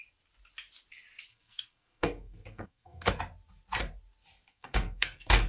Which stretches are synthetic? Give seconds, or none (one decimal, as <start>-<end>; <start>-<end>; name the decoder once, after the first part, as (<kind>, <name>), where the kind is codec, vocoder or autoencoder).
1.3-3.2 (codec, SNAC); 4.5-5.5